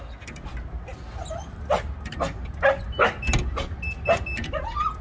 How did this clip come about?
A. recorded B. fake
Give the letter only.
A